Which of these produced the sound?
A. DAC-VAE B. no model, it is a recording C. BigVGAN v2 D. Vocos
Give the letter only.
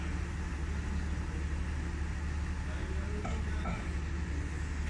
B